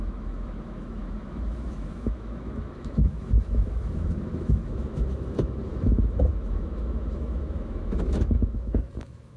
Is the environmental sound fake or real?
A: fake